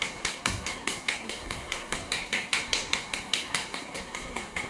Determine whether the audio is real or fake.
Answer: fake